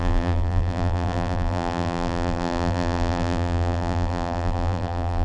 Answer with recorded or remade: remade